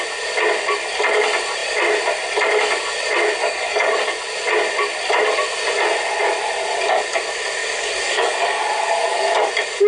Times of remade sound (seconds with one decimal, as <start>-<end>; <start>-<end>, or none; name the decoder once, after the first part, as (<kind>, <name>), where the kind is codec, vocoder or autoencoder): 3.4-4.0 (codec, DAC); 7.6-9.5